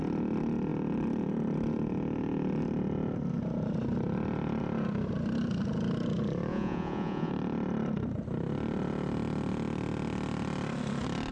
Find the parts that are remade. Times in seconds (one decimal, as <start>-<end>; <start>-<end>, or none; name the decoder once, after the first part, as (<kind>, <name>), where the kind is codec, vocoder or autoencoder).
6.5-7.3 (vocoder, Vocos)